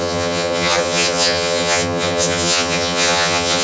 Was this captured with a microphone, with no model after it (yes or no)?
no